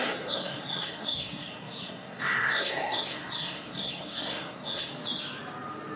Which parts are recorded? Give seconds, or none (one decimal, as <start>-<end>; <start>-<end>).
4.9-6.0